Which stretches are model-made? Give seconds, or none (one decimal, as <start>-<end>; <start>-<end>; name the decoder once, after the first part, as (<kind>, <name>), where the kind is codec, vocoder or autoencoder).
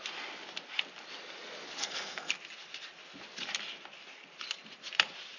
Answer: 1.8-2.3 (codec, SNAC)